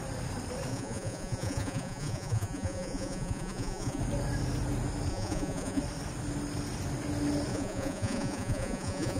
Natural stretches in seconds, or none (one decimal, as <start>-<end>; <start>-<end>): 0.0-0.7; 4.0-5.1; 5.8-7.5